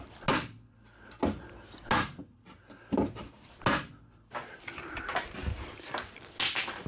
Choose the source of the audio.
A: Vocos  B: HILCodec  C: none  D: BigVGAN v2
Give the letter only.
C